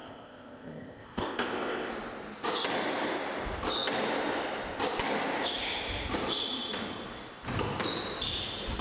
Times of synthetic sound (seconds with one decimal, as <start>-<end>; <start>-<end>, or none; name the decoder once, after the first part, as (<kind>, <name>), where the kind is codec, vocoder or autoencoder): 0.0-1.9 (codec, ZipCodec)

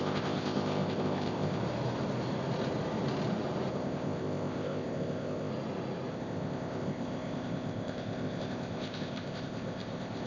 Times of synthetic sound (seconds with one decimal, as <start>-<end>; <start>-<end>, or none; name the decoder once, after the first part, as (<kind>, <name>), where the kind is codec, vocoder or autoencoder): 0.0-1.6 (codec, ZipCodec); 3.7-5.5; 6.1-10.3

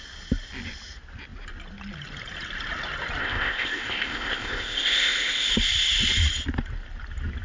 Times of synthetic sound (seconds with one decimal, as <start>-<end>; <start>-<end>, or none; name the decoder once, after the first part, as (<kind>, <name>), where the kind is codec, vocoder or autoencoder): 3.2-5.5 (codec, ZipCodec)

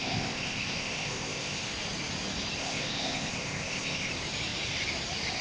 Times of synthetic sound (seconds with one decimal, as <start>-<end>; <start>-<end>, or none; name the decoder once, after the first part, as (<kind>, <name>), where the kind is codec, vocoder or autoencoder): 0.0-1.7 (codec, ZipCodec); 2.6-4.1